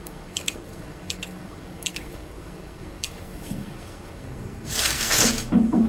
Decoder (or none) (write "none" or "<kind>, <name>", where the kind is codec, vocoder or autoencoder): codec, SNAC